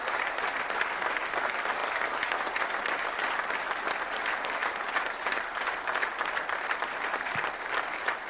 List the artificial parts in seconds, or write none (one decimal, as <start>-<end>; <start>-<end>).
0.0-8.3